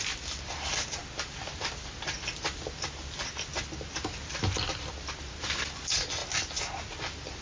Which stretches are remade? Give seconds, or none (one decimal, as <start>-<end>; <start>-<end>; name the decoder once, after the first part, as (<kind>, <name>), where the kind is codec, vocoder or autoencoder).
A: none